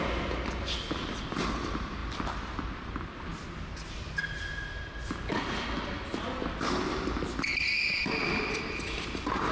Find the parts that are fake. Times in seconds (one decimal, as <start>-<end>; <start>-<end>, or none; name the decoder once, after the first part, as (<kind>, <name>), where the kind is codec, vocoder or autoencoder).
none